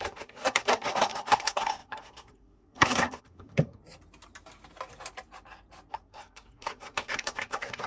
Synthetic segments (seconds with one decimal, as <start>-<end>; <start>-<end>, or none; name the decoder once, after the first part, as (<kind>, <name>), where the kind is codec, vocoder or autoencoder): 0.0-3.8 (codec, SNAC); 5.9-7.9